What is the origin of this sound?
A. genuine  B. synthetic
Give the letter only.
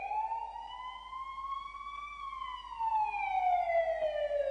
A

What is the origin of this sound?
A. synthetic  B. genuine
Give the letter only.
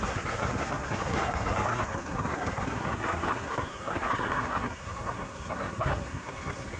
A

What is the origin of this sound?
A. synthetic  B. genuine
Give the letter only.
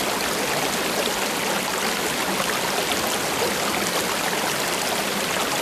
B